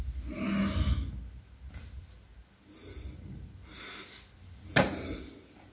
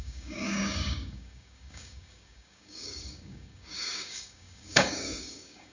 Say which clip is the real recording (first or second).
first